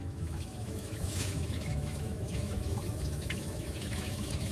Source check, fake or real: fake